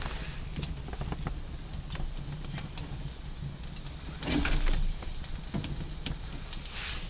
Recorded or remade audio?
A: recorded